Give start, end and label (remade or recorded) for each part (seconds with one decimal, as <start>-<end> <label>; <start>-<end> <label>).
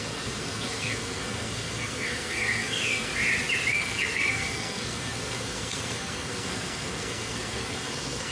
0.0-3.1 remade; 3.1-3.7 recorded; 3.7-8.3 remade